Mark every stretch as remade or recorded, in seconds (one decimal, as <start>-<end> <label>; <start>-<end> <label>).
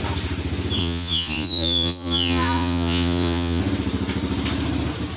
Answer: 0.0-0.8 recorded; 0.8-3.6 remade; 3.6-5.2 recorded